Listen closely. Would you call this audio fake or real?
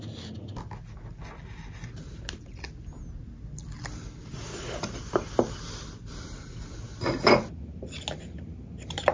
real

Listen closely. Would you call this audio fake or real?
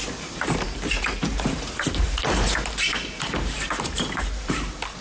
fake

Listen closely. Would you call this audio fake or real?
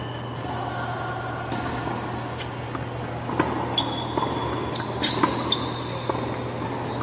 real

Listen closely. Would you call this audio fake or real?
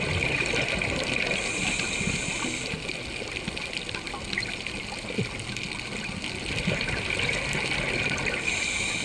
real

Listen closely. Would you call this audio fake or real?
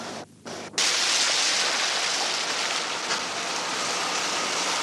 real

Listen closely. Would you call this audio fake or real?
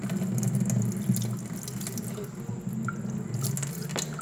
real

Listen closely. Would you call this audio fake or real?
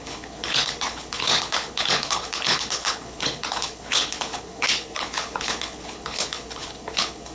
fake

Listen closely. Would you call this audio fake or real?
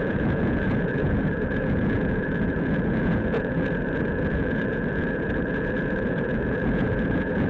fake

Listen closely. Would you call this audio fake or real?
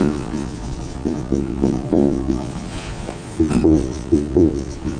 fake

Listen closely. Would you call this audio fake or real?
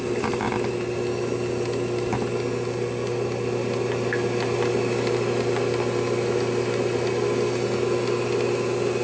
real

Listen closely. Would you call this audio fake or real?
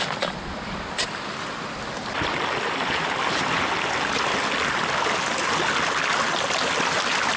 real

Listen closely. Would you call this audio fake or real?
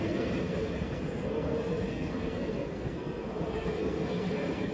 fake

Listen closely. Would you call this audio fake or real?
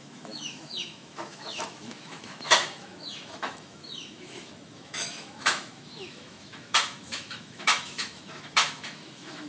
fake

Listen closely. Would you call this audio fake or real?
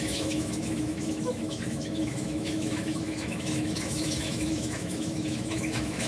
fake